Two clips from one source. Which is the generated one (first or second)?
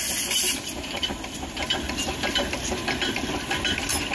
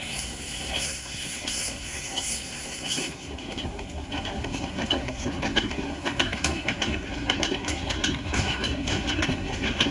second